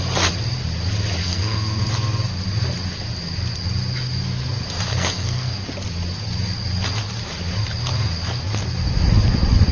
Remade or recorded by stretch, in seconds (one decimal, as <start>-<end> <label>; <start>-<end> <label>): 0.0-1.2 recorded; 1.2-1.8 remade; 1.8-4.9 recorded; 4.9-5.5 remade; 5.5-9.7 recorded